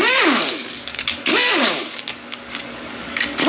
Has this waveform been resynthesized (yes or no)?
yes